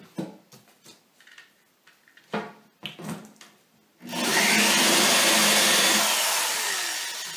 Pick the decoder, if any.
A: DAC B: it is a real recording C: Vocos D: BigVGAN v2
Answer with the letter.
B